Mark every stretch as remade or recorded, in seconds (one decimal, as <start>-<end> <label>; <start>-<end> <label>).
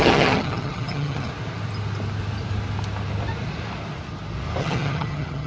0.0-1.3 remade; 1.3-4.6 recorded; 4.6-5.5 remade